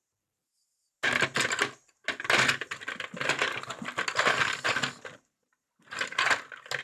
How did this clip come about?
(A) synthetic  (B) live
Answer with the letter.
B